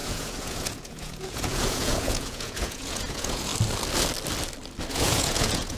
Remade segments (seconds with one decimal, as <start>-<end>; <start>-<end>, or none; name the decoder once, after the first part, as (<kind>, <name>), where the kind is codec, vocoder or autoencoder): 0.0-3.5 (vocoder, Vocos); 4.9-5.8